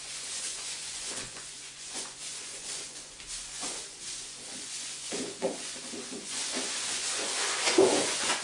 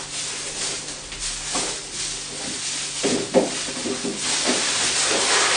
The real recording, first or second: second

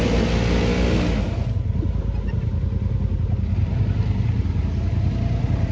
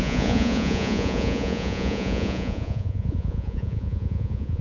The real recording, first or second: first